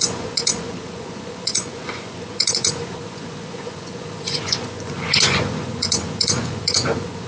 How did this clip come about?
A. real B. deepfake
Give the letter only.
B